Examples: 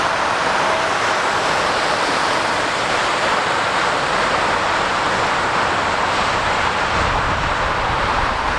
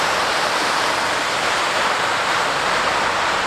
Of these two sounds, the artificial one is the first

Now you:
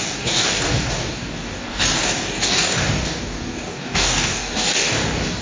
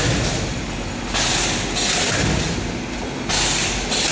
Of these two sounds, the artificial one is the first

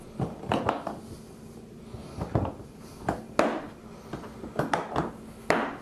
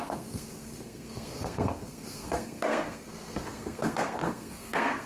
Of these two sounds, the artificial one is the second